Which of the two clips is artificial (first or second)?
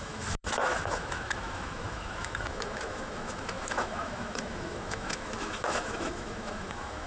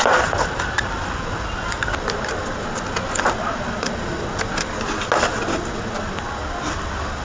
first